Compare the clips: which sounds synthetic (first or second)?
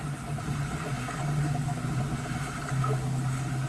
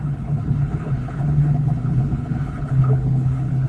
second